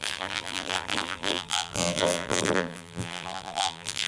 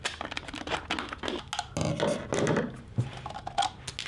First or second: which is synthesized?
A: first